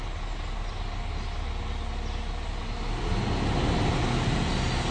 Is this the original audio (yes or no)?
yes